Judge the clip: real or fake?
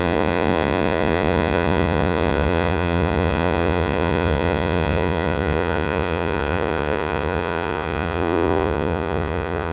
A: fake